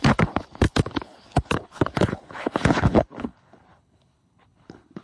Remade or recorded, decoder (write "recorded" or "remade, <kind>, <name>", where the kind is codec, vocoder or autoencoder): remade, codec, HILCodec